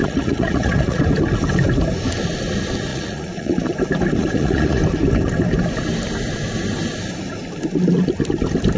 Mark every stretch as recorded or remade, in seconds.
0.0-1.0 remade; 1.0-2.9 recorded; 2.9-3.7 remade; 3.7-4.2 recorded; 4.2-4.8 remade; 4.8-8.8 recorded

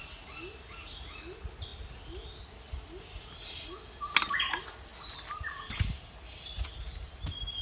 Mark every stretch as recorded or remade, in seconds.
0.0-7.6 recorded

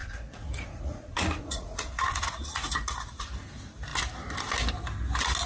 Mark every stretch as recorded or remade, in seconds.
0.0-3.3 remade; 3.3-5.5 recorded

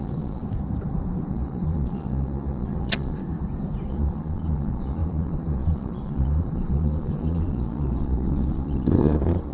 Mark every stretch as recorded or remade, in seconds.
0.0-0.4 remade; 0.4-1.3 recorded; 1.3-3.2 remade; 3.2-3.9 recorded; 3.9-9.5 remade

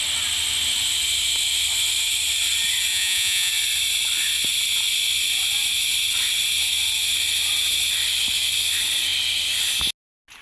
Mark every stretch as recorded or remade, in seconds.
0.0-2.9 recorded; 2.9-3.5 remade; 3.5-10.4 recorded

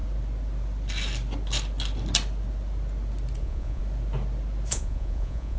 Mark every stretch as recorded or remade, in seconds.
0.0-3.4 recorded; 3.4-3.8 remade; 3.8-4.7 recorded; 4.7-5.6 remade

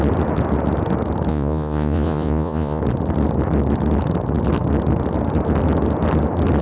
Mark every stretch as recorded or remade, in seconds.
0.0-1.3 recorded; 1.3-2.8 remade; 2.8-6.6 recorded

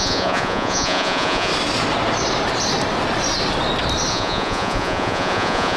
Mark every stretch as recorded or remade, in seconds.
0.0-1.5 remade; 1.5-4.1 recorded; 4.1-5.8 remade